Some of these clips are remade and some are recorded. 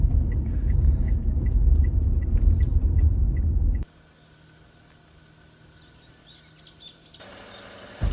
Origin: recorded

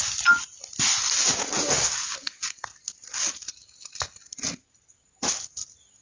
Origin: recorded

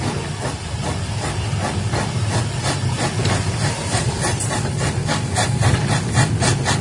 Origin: remade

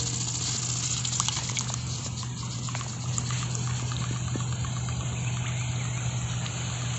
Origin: recorded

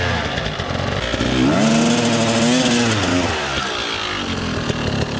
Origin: recorded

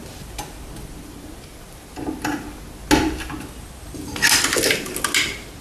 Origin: recorded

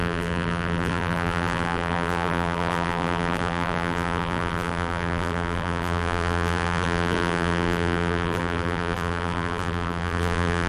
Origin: remade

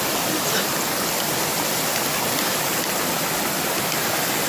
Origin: recorded